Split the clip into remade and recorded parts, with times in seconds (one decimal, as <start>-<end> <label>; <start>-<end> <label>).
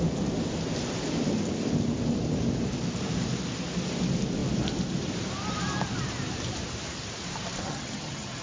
0.0-7.6 recorded; 7.6-8.4 remade